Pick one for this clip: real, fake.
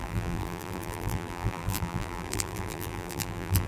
fake